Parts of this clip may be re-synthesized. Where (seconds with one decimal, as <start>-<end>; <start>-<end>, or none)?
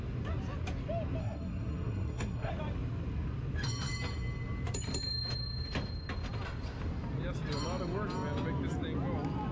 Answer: 1.2-2.5